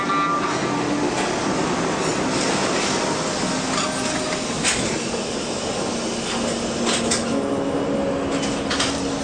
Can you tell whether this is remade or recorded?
recorded